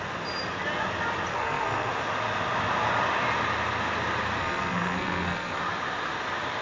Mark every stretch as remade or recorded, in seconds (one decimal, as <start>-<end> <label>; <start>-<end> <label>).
0.0-1.3 recorded; 1.3-1.9 remade; 1.9-4.4 recorded; 4.4-5.6 remade; 5.6-6.6 recorded